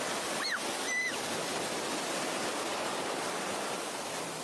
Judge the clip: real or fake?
real